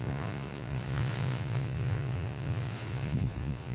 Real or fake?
fake